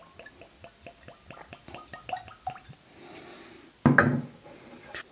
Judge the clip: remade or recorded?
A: recorded